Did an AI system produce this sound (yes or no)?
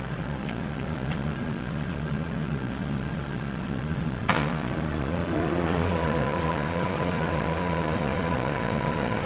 yes